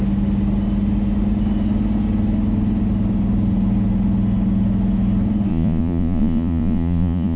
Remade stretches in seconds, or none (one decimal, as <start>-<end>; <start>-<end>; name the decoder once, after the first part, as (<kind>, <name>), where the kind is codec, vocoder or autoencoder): 5.5-7.4 (vocoder, Vocos)